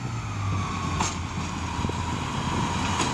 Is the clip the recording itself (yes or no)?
yes